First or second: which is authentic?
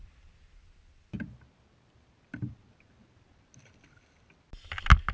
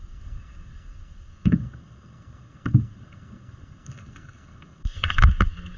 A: first